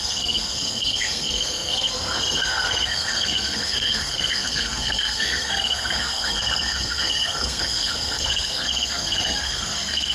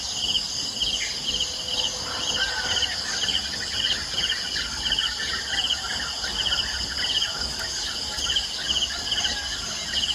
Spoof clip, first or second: first